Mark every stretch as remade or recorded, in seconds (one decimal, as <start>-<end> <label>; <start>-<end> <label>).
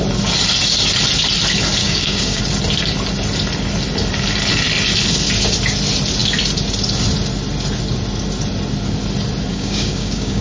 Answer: 0.0-1.8 recorded; 1.8-2.4 remade; 2.4-9.5 recorded; 9.5-10.4 remade